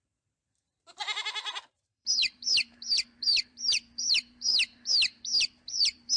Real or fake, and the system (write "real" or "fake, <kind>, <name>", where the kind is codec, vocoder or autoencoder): fake, vocoder, BigVGAN v2